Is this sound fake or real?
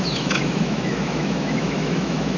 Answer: fake